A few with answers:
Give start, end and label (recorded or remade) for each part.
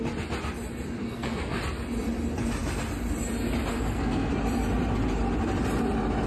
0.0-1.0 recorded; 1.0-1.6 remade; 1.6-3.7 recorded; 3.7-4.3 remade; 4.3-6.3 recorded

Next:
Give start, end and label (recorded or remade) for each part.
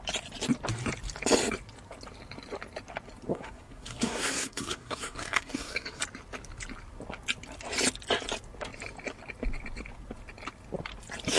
0.0-3.3 recorded; 3.3-6.0 remade; 6.0-11.4 recorded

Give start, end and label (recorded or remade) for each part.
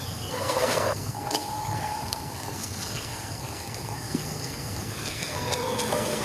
0.0-6.2 remade